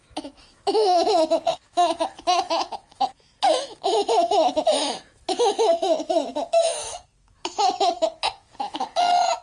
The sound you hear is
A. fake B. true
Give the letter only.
A